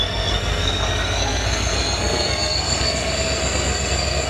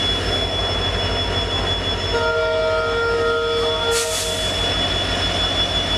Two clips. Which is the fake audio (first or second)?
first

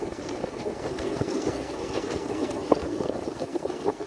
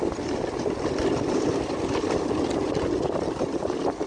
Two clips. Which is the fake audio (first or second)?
first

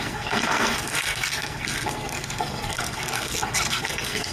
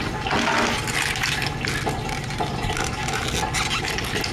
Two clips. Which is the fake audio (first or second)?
first